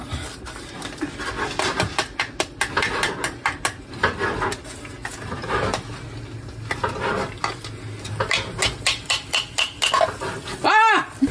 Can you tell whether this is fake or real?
real